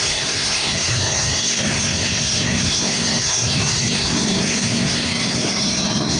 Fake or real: fake